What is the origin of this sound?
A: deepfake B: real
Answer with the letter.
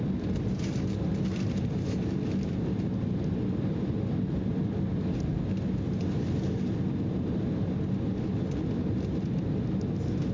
B